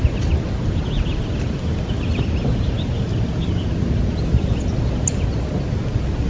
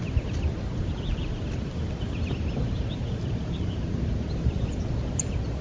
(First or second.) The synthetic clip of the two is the second